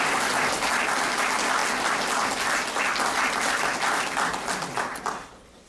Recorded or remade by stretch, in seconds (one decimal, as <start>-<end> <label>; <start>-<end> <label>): 0.0-5.7 recorded